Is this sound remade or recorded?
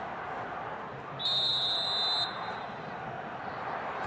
recorded